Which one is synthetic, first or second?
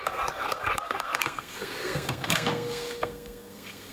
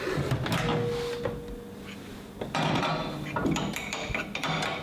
first